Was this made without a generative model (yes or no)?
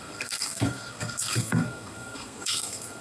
no